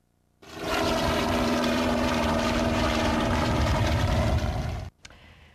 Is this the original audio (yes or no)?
no